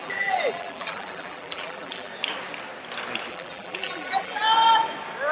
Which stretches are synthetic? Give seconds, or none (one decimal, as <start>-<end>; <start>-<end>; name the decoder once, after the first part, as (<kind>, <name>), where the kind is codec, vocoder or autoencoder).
0.0-2.1 (vocoder, BigVGAN v2); 3.3-4.4